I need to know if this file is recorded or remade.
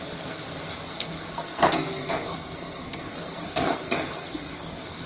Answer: remade